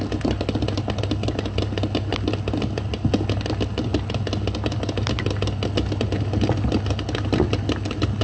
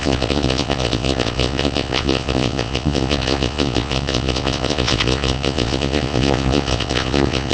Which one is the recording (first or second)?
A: first